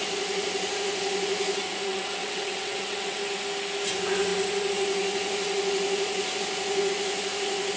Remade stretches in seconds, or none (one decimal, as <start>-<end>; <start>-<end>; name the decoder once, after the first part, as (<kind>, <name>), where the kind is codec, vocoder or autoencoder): 1.9-3.2 (vocoder, WaveNeXt)